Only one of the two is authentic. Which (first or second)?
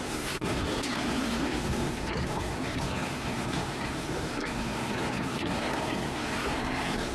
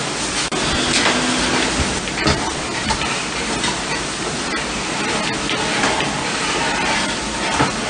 second